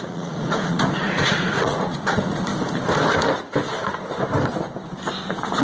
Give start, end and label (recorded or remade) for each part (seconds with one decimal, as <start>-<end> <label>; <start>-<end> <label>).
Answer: 0.0-2.5 remade; 2.5-5.6 recorded